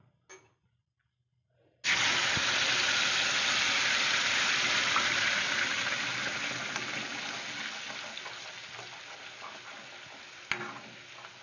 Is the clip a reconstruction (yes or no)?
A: no